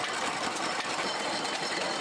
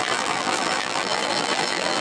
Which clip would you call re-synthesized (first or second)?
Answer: second